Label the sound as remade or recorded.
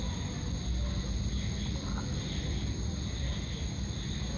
recorded